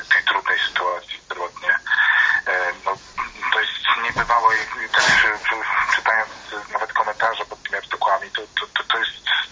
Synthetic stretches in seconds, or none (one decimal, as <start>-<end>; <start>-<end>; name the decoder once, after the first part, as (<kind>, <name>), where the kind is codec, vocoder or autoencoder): none